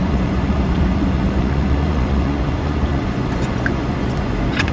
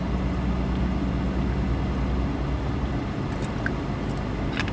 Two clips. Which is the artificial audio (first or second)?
first